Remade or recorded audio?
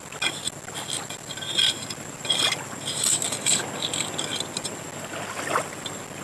recorded